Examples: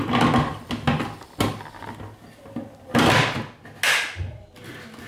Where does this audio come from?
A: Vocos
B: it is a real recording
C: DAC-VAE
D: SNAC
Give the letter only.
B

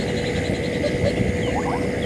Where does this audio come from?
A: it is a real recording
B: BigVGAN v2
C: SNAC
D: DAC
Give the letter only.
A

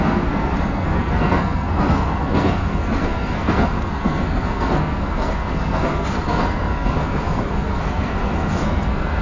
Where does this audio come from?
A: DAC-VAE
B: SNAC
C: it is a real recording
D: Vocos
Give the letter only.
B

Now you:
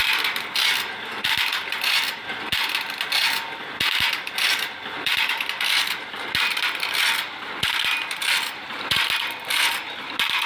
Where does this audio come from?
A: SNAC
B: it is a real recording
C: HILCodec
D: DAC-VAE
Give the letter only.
B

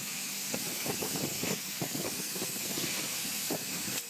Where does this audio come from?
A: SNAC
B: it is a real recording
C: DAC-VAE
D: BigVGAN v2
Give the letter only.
A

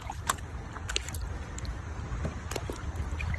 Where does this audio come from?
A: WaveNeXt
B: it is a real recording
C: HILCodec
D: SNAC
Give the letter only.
B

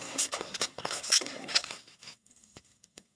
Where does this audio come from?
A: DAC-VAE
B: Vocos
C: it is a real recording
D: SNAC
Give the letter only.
D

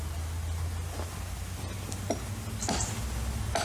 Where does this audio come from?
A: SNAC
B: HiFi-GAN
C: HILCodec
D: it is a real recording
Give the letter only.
D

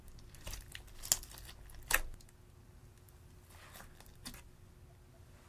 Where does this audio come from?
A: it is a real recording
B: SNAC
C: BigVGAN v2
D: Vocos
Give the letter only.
A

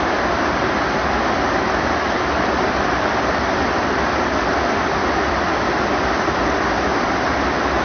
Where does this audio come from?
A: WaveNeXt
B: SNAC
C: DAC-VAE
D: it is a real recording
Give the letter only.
D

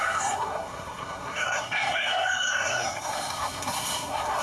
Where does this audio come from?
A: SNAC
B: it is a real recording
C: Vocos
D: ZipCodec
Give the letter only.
A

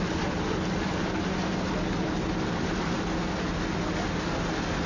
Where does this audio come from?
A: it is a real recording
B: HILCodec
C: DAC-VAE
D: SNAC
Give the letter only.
A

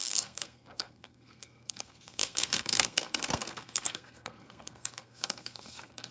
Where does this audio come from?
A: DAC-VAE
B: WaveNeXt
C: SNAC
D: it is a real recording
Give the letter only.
C